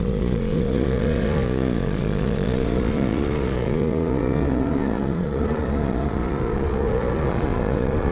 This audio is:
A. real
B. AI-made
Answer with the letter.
B